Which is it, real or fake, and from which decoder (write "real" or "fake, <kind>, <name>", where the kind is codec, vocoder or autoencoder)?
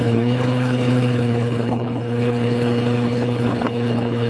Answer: fake, codec, HILCodec